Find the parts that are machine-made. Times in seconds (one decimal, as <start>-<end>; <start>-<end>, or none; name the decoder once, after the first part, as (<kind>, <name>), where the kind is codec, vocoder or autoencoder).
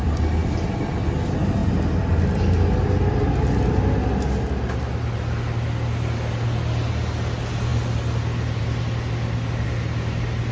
0.4-0.9 (vocoder, BigVGAN v2)